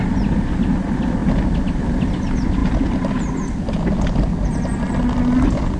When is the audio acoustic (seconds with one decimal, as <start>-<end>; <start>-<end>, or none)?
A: 0.0-5.8